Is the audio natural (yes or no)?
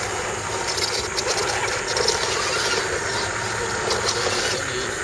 yes